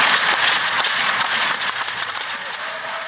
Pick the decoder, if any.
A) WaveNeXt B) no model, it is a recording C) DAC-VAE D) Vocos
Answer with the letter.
D